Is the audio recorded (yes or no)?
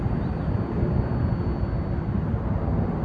yes